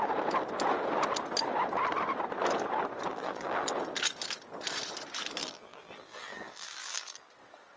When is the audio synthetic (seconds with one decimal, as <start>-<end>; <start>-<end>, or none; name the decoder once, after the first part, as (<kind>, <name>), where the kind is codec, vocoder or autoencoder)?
3.1-3.7 (vocoder, BigVGAN v2); 5.4-7.3

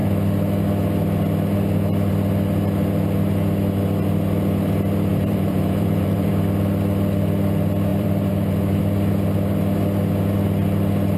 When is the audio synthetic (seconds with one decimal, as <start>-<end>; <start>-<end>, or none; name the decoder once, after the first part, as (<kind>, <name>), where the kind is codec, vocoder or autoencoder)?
5.1-6.3 (vocoder, BigVGAN v2); 7.9-8.8

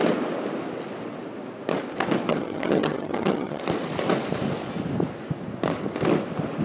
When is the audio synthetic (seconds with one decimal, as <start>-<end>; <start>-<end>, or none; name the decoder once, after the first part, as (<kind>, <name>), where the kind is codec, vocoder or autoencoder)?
2.3-3.6 (vocoder, HiFi-GAN)

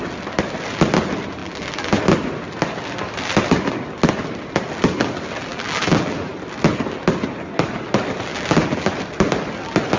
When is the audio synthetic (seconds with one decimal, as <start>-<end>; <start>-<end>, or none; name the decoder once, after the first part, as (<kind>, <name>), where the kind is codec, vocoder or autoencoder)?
1.4-2.0 (vocoder, BigVGAN v2); 5.5-6.3; 8.3-8.9